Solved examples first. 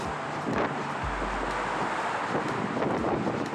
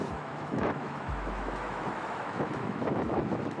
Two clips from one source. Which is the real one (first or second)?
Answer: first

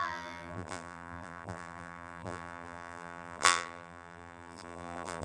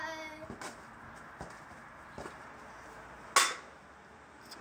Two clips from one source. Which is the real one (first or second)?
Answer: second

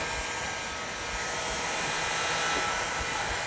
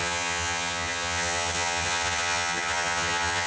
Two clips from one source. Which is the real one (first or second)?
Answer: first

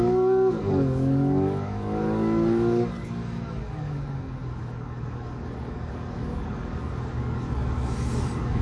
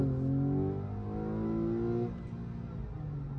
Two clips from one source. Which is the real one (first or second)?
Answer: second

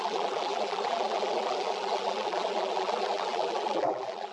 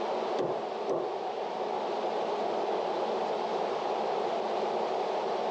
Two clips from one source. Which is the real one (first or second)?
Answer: second